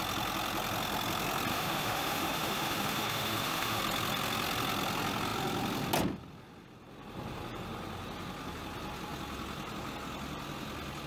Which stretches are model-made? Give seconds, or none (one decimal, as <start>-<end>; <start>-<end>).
1.5-3.8